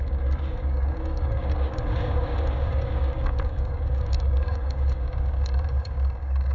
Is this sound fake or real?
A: fake